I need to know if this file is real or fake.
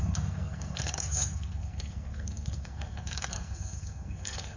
fake